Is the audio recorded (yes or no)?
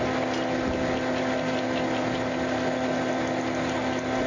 yes